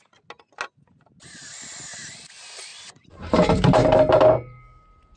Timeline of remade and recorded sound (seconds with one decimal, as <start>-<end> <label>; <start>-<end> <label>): 0.0-2.7 recorded; 2.7-4.2 remade; 4.2-5.2 recorded